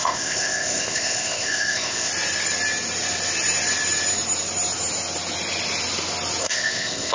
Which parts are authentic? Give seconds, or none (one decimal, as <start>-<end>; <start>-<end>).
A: 2.1-6.4

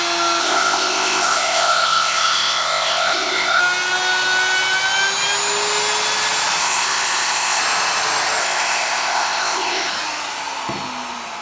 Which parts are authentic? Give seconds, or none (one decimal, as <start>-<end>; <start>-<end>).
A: 0.0-0.4; 3.6-6.6; 7.6-8.4; 9.9-11.4

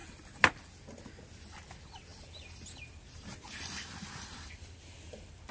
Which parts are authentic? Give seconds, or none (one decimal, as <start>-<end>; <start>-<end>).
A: 0.0-5.5

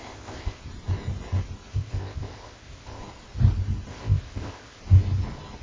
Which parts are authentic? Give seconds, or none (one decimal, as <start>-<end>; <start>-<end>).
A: 0.6-1.7; 3.0-3.9; 4.8-5.6

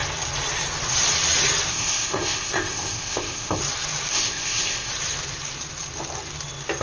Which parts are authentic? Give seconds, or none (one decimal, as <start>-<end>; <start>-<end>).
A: 0.0-1.7; 3.6-4.1; 4.9-6.8

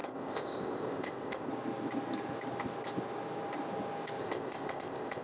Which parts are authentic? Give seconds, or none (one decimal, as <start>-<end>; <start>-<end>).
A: 1.5-4.2

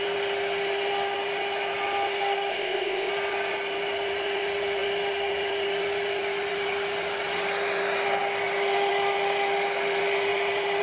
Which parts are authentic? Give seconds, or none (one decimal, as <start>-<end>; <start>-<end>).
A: 0.0-2.5; 3.1-10.8

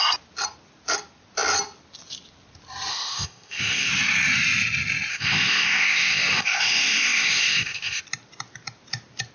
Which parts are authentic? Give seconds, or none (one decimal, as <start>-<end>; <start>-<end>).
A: 0.0-2.9; 3.9-5.1; 8.0-9.3